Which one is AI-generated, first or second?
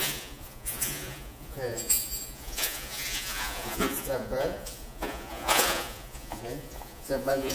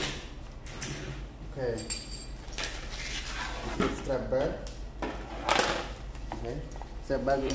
first